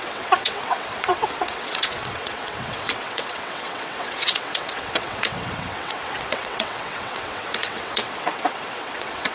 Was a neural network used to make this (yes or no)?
yes